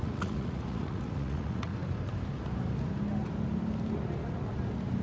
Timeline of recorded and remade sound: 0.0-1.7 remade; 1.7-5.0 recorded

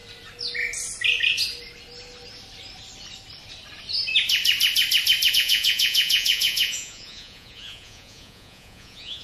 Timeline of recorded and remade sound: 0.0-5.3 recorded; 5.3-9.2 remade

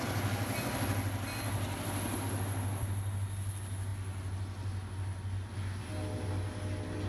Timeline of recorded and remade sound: 0.0-7.1 recorded